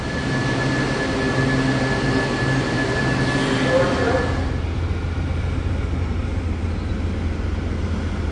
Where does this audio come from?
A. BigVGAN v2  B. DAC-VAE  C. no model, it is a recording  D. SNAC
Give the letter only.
C